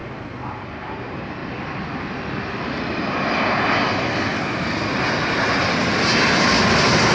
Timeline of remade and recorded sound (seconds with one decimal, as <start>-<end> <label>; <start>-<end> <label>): 0.0-7.1 recorded